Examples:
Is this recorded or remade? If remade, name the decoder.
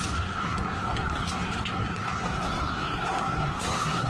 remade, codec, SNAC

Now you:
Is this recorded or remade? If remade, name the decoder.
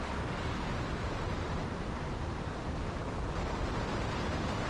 recorded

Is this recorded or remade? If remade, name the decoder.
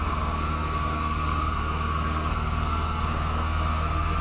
remade, codec, SNAC